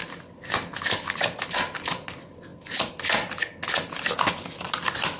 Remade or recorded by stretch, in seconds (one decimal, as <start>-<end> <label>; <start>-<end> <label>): 0.0-5.2 recorded